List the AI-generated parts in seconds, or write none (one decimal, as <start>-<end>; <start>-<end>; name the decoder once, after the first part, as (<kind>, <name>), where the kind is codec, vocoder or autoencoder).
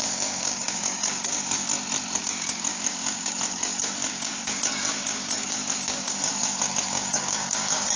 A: 0.0-1.7 (codec, DAC); 2.2-8.0